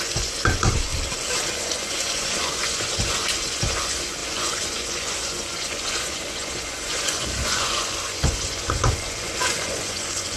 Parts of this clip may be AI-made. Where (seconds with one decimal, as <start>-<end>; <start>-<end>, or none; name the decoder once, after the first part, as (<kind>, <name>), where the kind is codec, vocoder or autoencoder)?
0.0-0.9 (vocoder, Vocos); 1.5-10.4